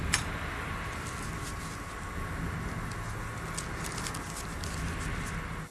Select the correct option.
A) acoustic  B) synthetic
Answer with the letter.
A